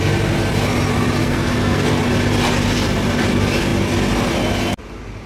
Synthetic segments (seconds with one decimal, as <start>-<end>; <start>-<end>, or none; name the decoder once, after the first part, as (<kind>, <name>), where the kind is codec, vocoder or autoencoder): 1.2-2.0 (codec, SNAC)